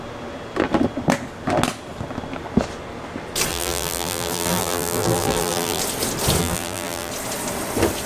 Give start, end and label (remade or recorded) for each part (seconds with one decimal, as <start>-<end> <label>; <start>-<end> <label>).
0.0-3.5 recorded; 3.5-5.8 remade; 5.8-6.4 recorded; 6.4-7.1 remade; 7.1-8.1 recorded